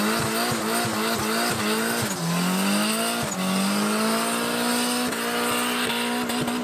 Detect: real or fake real